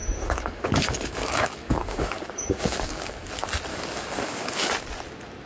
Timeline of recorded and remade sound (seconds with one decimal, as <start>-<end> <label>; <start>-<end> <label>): 0.0-3.3 remade; 3.3-3.7 recorded; 3.7-4.7 remade; 4.7-5.5 recorded